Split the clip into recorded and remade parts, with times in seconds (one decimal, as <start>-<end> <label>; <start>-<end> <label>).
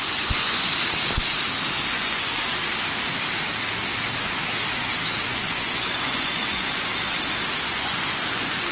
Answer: 0.0-0.7 remade; 0.7-1.9 recorded; 1.9-2.6 remade; 2.6-5.2 recorded; 5.2-6.9 remade; 6.9-7.6 recorded; 7.6-8.7 remade